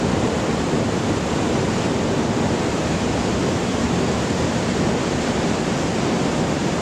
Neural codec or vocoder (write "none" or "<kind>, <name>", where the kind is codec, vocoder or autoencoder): none